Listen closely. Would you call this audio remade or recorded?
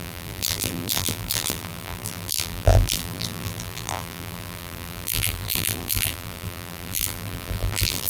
remade